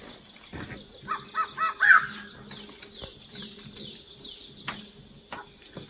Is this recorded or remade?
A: recorded